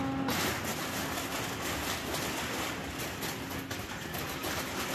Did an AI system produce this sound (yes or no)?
no